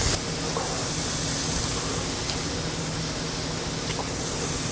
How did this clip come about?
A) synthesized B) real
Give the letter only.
B